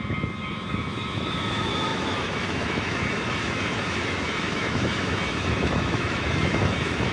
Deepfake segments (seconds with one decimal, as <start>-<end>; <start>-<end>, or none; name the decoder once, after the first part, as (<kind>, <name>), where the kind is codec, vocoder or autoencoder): 0.0-7.1 (autoencoder, DAC-VAE)